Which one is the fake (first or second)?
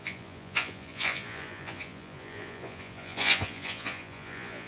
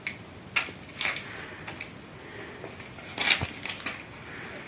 first